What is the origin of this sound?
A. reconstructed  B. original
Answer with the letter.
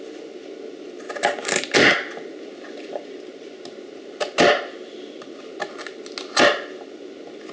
B